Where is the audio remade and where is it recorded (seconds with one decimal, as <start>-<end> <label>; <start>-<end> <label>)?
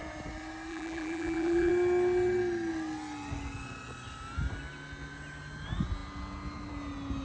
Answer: 0.0-0.7 recorded; 0.7-1.7 remade; 1.7-7.2 recorded